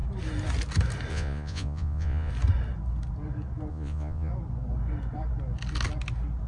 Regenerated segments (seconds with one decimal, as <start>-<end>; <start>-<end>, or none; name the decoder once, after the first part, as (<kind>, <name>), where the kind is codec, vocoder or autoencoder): 1.1-2.3 (vocoder, Vocos); 3.7-4.3